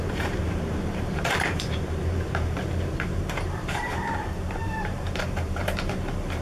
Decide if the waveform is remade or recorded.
remade